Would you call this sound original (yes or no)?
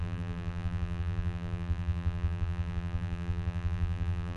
no